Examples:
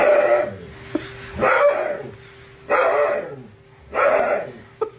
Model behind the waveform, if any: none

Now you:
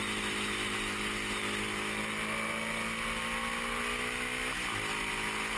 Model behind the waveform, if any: none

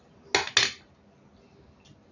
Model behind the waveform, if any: none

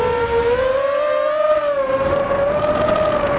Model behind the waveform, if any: none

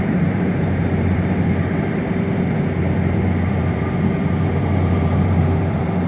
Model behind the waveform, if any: vocoder, BigVGAN v2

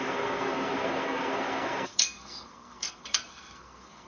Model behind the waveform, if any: codec, SNAC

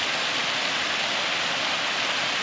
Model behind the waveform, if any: none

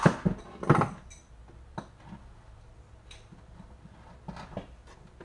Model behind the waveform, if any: none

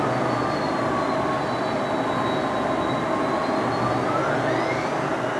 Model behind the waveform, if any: none